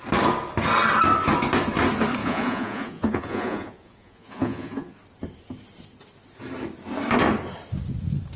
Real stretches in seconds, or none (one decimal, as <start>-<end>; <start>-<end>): 0.0-2.2; 4.9-8.4